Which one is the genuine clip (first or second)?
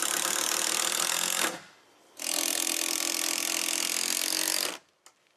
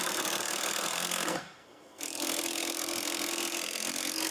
first